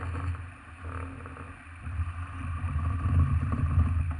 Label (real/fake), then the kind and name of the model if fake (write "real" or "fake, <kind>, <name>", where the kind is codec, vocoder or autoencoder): real